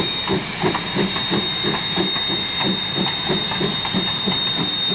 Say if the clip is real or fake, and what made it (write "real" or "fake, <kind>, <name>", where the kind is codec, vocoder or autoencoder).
real